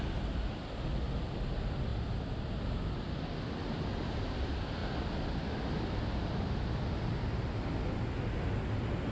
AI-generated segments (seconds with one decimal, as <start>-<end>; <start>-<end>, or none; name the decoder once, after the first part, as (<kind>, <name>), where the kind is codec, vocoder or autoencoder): none